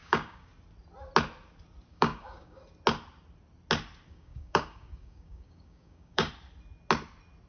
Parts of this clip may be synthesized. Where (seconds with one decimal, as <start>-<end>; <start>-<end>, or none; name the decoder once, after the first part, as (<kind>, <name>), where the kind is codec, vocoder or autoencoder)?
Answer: 0.0-0.5 (codec, DAC); 1.9-2.6; 4.1-6.3